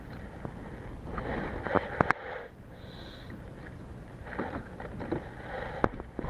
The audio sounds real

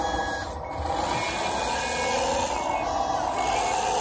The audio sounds real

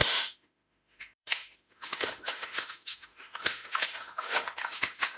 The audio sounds fake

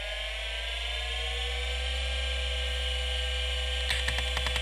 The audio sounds real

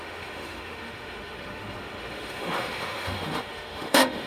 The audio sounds fake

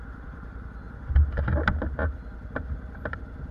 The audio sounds real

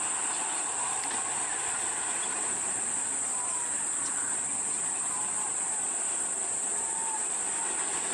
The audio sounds fake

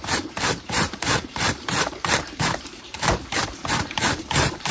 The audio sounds fake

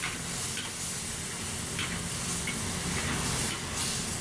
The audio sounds real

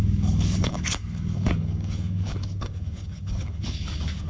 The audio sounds fake